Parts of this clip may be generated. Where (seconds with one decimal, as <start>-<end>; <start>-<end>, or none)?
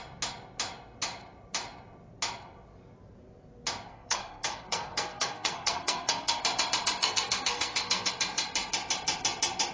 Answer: 3.9-6.4; 7.0-8.1